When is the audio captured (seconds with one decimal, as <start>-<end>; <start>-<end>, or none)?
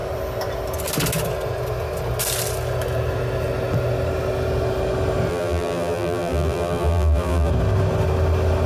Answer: 0.0-5.3; 7.5-8.7